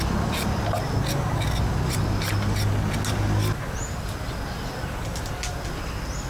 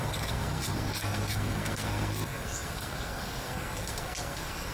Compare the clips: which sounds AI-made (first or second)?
second